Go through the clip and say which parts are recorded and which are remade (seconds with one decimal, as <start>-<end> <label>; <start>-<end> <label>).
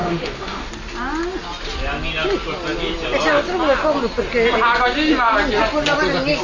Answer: 0.0-0.7 remade; 0.7-6.4 recorded